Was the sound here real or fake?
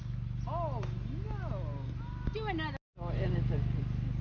real